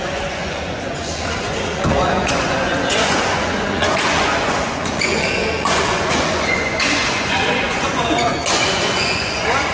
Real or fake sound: fake